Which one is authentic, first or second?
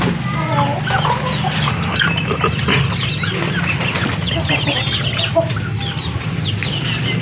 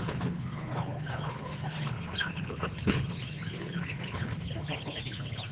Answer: first